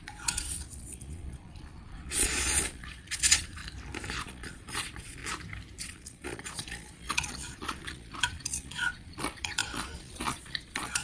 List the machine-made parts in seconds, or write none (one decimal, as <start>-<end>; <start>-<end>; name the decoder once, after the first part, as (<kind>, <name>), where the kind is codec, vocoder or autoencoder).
0.0-3.6 (vocoder, Vocos); 4.2-5.2; 5.8-11.0